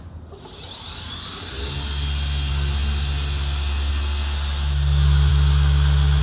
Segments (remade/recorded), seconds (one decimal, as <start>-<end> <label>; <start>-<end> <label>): 0.0-6.2 recorded